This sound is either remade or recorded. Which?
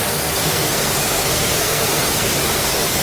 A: remade